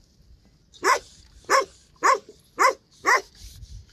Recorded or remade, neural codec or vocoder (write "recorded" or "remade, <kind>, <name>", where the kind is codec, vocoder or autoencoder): recorded